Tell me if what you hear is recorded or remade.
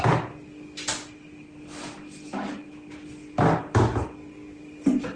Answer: recorded